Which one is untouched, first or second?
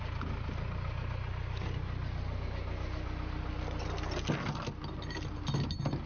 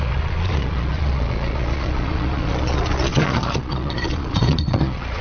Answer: first